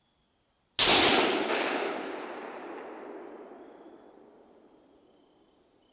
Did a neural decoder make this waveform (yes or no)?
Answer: no